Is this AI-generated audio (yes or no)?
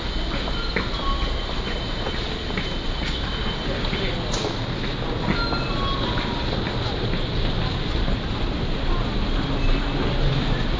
no